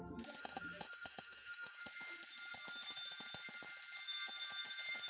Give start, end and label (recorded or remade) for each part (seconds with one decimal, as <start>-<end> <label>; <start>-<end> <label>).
0.0-0.4 recorded; 0.4-1.8 remade; 1.8-5.1 recorded